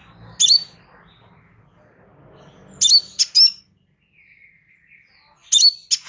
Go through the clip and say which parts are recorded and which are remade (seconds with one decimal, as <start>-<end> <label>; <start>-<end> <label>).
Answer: 0.0-6.1 recorded